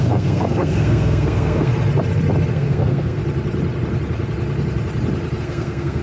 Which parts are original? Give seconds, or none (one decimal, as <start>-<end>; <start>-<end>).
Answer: 1.7-2.5; 3.2-5.4